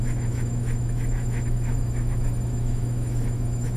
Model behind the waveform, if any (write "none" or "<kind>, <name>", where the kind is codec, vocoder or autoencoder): autoencoder, DAC-VAE